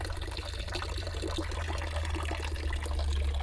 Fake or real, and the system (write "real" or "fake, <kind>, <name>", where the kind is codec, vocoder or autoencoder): real